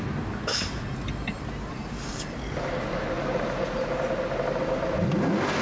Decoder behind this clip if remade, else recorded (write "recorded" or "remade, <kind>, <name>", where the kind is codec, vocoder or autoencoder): recorded